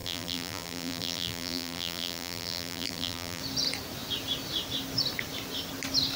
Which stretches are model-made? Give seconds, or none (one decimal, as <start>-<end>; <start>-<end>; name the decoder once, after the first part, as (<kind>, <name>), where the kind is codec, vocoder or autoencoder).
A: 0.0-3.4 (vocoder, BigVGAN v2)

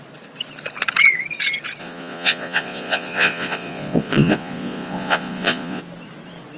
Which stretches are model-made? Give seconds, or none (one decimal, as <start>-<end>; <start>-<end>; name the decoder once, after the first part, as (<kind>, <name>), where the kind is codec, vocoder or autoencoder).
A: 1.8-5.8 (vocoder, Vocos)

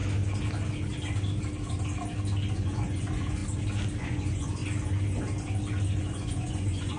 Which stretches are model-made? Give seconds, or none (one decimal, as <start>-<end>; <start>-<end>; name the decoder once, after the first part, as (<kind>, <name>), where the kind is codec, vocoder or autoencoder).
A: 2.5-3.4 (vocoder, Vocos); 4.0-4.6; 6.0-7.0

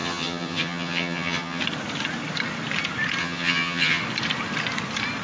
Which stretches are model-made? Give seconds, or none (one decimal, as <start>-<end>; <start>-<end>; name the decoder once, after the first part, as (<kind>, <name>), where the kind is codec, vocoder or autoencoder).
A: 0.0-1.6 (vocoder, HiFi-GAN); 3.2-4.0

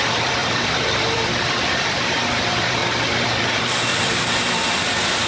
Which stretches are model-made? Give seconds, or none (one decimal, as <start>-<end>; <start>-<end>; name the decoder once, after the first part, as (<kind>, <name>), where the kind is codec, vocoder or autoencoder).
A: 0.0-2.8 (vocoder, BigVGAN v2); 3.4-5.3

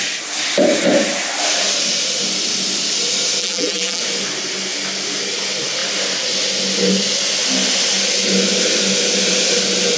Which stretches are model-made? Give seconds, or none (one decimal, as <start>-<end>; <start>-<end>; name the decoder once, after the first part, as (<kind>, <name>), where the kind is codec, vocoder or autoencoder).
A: 3.4-4.0 (vocoder, BigVGAN v2)

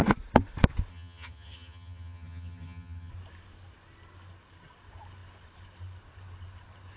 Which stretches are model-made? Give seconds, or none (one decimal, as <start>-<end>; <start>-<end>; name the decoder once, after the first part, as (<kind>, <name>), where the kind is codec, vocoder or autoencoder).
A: 0.9-3.1 (vocoder, HiFi-GAN)

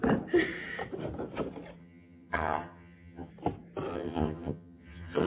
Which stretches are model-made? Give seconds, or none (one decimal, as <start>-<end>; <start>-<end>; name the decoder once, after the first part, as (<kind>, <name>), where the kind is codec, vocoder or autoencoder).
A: 1.8-3.3 (vocoder, HiFi-GAN); 3.9-5.3